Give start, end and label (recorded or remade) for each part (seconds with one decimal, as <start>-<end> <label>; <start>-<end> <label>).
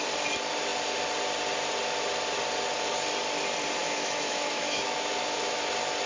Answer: 0.0-3.8 recorded; 3.8-5.6 remade; 5.6-6.1 recorded